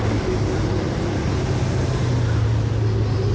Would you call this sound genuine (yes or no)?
yes